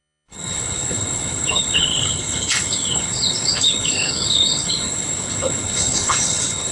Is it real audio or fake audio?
fake